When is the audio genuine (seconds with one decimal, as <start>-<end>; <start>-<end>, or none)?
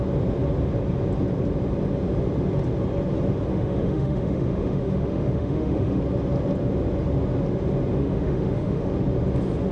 0.0-3.5; 6.0-8.0; 8.9-9.7